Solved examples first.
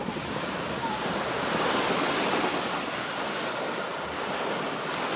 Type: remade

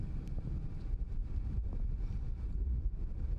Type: recorded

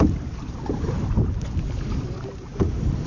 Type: remade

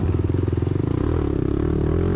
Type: recorded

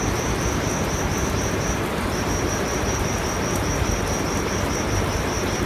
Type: recorded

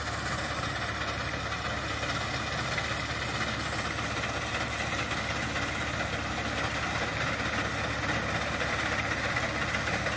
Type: recorded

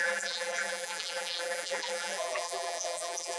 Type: remade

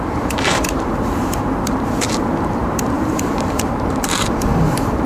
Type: remade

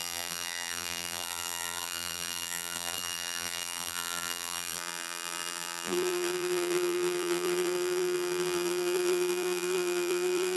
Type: remade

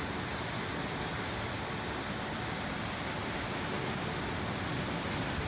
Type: recorded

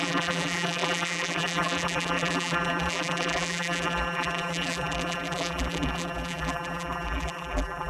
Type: remade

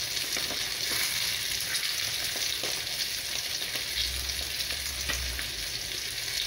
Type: recorded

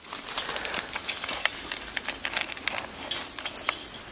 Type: recorded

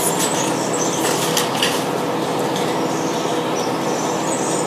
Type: recorded